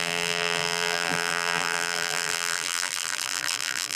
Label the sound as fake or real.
fake